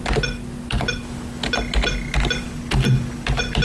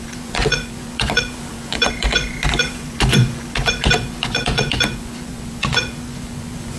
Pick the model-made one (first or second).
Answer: second